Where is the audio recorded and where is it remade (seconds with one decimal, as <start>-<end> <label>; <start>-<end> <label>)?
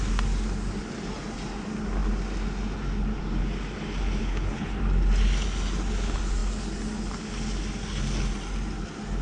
0.0-4.2 recorded; 4.2-4.8 remade; 4.8-9.2 recorded